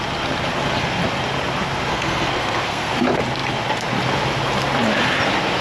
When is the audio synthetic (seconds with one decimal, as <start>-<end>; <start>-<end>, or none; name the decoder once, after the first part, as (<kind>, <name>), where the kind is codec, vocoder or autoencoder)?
1.9-2.9 (codec, SNAC)